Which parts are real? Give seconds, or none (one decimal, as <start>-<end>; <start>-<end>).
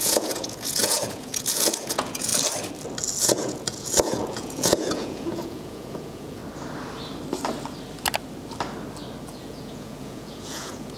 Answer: 2.3-3.2; 6.4-9.3